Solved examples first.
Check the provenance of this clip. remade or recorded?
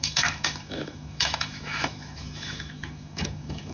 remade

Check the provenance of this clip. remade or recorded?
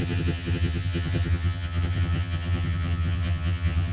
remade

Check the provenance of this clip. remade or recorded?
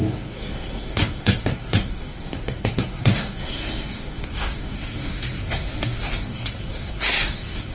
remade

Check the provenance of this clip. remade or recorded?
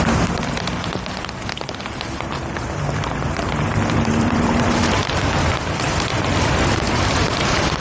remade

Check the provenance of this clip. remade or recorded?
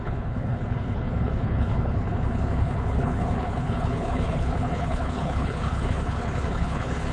remade